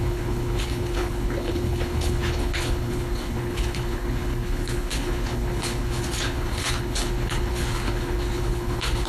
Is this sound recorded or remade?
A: remade